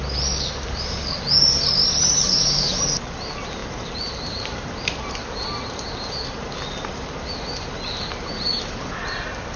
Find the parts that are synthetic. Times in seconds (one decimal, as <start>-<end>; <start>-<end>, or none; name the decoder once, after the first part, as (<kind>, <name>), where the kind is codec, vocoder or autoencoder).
none